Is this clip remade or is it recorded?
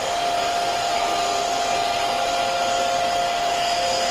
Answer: recorded